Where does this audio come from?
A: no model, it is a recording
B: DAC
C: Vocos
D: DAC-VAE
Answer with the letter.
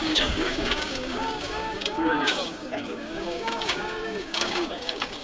B